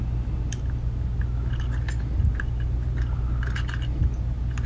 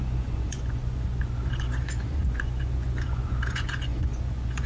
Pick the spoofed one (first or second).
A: second